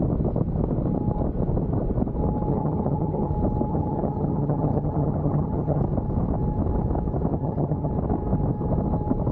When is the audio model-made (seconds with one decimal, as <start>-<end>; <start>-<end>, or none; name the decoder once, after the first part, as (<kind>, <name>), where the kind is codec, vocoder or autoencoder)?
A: 2.5-3.3 (vocoder, HiFi-GAN); 3.7-5.8; 7.3-7.9